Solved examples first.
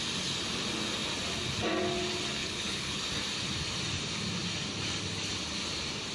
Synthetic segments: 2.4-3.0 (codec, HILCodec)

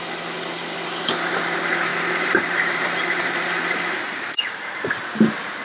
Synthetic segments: 1.9-4.9 (vocoder, BigVGAN v2)

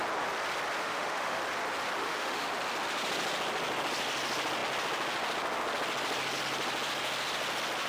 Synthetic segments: 0.8-1.4 (autoencoder, DAC-VAE); 2.0-2.5